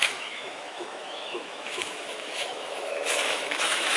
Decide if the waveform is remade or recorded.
remade